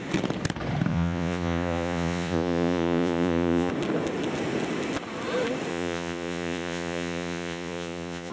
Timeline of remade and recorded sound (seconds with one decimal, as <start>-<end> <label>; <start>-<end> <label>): 0.0-0.9 recorded; 0.9-3.7 remade; 3.7-5.7 recorded; 5.7-8.3 remade